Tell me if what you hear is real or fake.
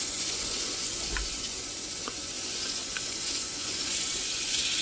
fake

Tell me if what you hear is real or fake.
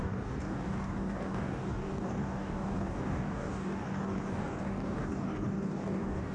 fake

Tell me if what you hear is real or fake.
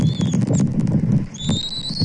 real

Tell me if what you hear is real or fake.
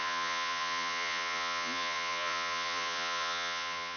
fake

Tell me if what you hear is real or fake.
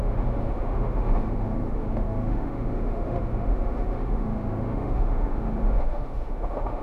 fake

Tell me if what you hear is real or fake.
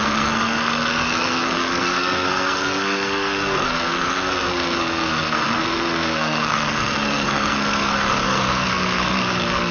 fake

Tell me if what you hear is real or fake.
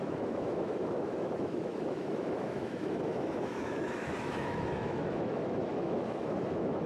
fake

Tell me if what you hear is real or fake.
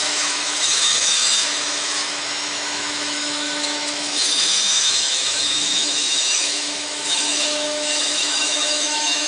fake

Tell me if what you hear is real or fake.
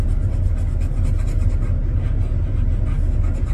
real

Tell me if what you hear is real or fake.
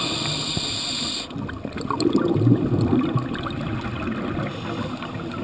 real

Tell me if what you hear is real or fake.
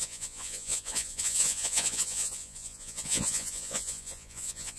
fake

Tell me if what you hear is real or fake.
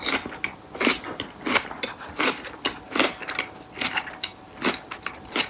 real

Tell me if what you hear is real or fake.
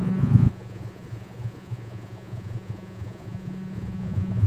fake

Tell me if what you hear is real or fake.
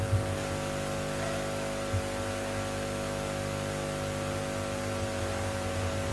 real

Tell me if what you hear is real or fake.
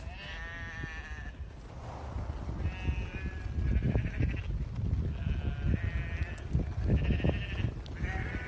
real